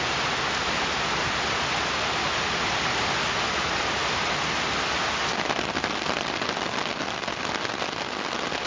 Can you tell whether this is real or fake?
real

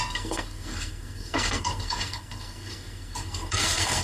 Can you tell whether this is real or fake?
fake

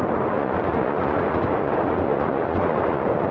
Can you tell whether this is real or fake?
fake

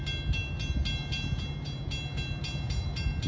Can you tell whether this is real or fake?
real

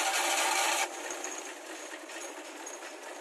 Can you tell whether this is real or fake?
real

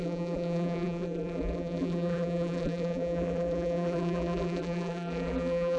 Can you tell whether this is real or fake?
fake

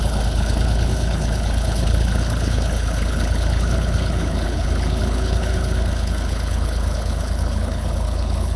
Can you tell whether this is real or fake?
fake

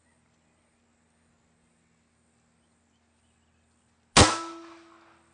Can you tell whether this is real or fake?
real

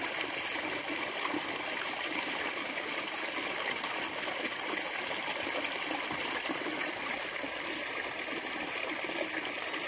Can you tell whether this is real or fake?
real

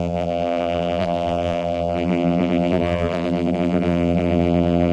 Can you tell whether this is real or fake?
fake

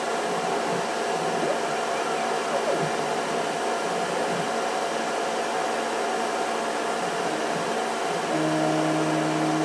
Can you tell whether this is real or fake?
real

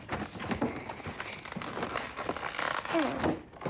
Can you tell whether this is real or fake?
real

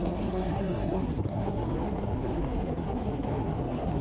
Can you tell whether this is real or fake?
fake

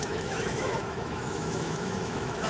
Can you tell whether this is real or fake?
fake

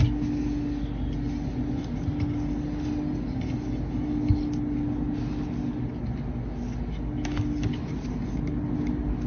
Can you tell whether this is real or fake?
real